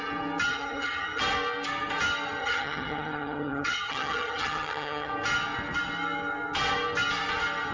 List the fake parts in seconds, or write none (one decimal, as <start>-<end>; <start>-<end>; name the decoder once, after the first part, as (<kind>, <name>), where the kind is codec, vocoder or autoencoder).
0.5-1.2 (vocoder, HiFi-GAN); 2.4-5.1